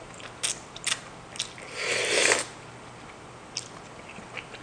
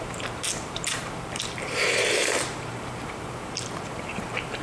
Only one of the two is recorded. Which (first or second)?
first